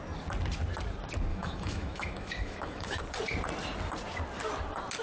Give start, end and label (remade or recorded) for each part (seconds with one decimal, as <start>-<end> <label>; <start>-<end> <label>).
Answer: 0.0-1.3 recorded; 1.3-3.0 remade; 3.0-5.0 recorded